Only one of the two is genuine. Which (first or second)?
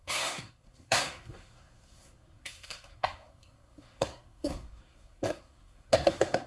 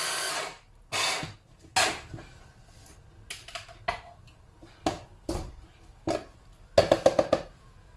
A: second